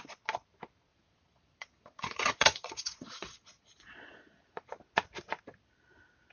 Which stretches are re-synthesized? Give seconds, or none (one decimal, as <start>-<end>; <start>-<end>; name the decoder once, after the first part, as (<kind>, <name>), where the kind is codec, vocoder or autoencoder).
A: 0.9-4.7 (vocoder, Vocos)